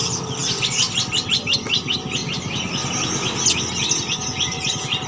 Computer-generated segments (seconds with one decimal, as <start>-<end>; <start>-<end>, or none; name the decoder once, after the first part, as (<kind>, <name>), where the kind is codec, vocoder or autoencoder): none